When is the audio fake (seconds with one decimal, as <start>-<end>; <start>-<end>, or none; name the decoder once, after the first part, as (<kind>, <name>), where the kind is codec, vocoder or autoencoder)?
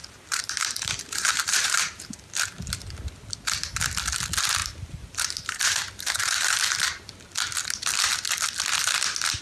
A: 0.0-2.1 (vocoder, BigVGAN v2); 4.6-6.7